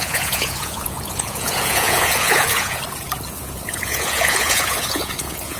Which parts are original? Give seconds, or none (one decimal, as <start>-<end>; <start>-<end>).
2.8-3.3